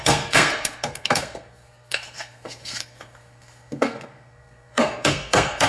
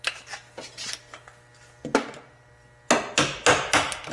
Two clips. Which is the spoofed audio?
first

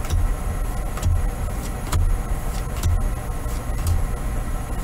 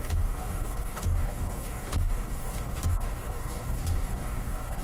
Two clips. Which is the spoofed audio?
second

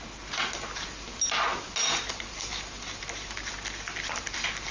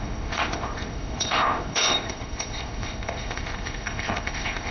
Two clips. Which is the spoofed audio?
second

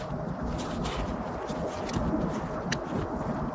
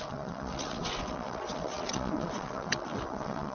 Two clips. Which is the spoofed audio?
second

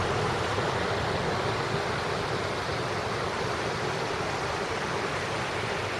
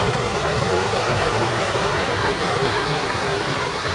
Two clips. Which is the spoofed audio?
second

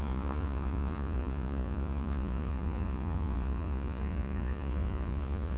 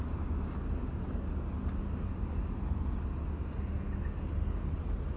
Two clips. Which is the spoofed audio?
first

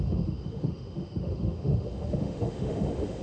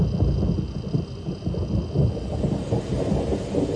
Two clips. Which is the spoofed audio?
first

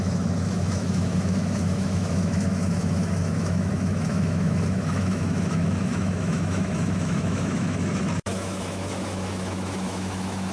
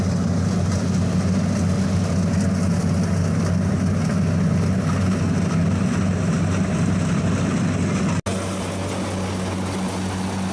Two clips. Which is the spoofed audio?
first